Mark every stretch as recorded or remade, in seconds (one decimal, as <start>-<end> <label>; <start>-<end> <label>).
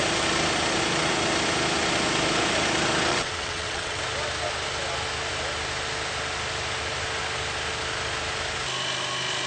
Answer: 0.0-3.1 recorded; 3.1-4.0 remade; 4.0-9.5 recorded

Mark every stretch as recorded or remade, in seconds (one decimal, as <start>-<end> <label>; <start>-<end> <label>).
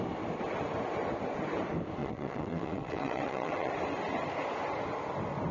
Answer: 0.0-2.0 recorded; 2.0-3.7 remade; 3.7-5.5 recorded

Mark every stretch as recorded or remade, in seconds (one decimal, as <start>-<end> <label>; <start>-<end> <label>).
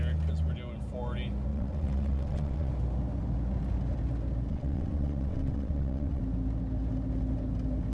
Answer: 0.0-1.5 recorded; 1.5-2.7 remade; 2.7-4.5 recorded; 4.5-6.2 remade; 6.2-7.9 recorded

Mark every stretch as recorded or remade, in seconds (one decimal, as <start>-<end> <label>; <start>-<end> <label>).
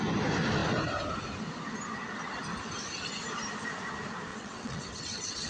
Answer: 0.0-4.3 recorded; 4.3-5.5 remade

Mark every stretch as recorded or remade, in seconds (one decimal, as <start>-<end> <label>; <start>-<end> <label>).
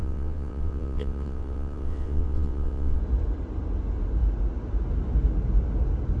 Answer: 0.0-3.0 remade; 3.0-6.2 recorded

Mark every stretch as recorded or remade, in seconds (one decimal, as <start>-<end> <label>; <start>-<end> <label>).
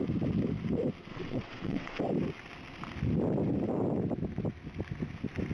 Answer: 0.0-1.1 recorded; 1.1-2.0 remade; 2.0-5.5 recorded